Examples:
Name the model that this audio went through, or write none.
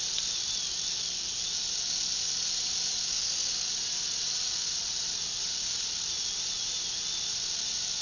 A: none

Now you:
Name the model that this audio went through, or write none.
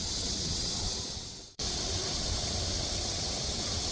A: vocoder, WaveNeXt